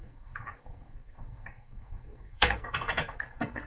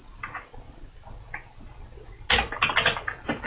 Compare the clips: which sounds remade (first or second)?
first